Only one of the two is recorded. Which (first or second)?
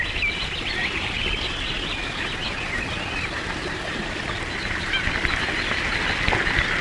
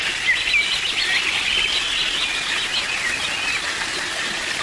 second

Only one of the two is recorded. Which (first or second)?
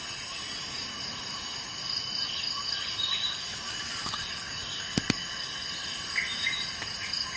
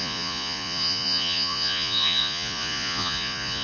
first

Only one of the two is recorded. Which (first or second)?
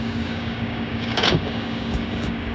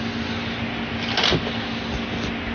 second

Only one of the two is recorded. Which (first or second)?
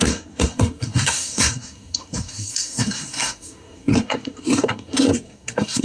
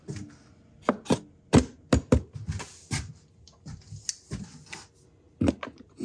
second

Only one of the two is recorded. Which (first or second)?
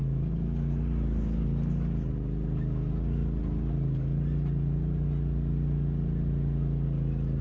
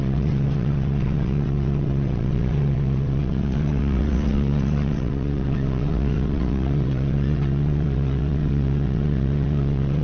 first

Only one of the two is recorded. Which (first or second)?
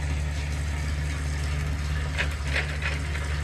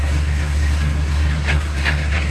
first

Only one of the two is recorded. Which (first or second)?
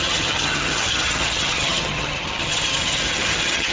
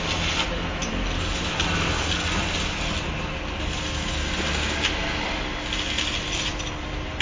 second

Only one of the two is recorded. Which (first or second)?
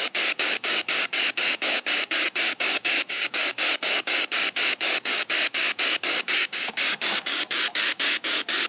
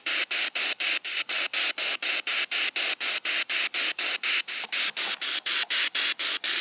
second